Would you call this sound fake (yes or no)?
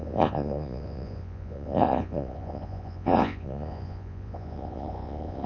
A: yes